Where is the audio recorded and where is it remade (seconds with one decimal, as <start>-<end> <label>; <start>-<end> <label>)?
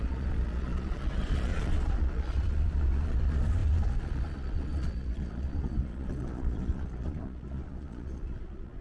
0.0-8.8 remade